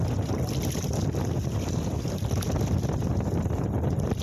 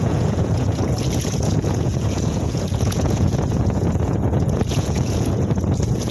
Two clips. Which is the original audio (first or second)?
first